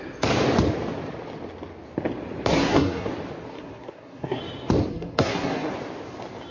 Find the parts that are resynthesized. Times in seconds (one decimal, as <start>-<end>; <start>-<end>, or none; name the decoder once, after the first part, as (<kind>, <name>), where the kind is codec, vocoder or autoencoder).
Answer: 2.5-3.1 (codec, SNAC); 3.5-4.4; 4.9-5.7